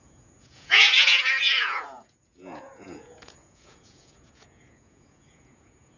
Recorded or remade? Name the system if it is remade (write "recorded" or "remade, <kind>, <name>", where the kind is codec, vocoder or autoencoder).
remade, vocoder, Vocos